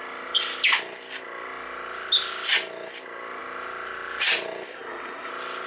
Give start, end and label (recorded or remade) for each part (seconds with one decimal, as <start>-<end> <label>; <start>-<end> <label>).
0.0-4.7 recorded; 4.7-5.3 remade; 5.3-5.7 recorded